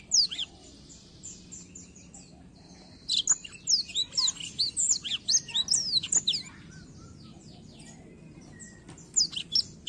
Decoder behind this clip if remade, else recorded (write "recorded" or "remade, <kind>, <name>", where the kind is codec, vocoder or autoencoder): recorded